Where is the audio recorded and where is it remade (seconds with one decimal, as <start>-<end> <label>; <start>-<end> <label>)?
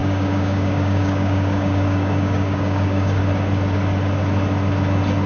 0.0-3.2 remade; 3.2-5.3 recorded